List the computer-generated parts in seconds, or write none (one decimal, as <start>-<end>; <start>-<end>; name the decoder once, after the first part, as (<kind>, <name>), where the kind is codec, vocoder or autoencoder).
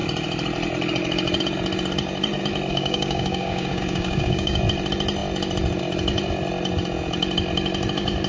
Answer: 2.7-4.6 (codec, DAC)